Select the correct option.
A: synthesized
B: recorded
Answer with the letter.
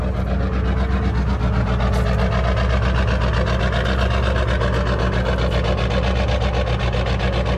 B